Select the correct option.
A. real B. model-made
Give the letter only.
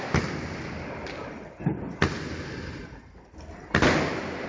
A